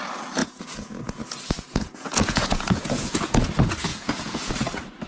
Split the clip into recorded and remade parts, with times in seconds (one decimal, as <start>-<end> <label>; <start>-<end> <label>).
0.0-0.4 recorded; 0.4-3.5 remade; 3.5-3.9 recorded; 3.9-4.5 remade; 4.5-5.1 recorded

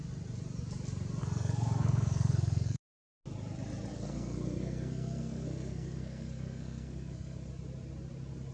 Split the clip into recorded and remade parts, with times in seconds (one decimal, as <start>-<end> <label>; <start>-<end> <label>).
0.0-1.2 recorded; 1.2-3.2 remade; 3.2-3.9 recorded; 3.9-7.5 remade; 7.5-8.5 recorded

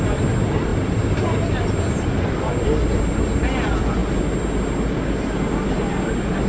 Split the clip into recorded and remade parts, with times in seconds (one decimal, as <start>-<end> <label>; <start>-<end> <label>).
0.0-6.5 recorded